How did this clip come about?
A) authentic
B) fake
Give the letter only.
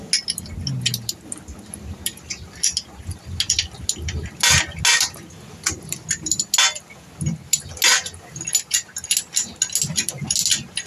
A